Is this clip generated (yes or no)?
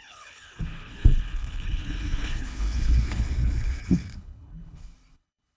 yes